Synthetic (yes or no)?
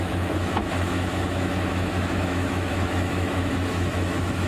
yes